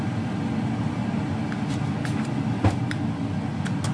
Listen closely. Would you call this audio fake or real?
real